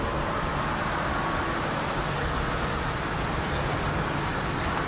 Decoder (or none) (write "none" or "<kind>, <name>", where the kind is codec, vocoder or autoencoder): none